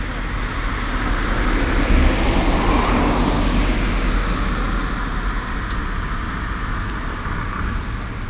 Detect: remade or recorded recorded